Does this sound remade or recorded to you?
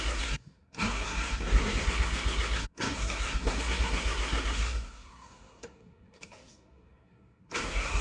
remade